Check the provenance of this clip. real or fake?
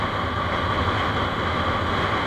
real